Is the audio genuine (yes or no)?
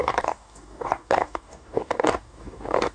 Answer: no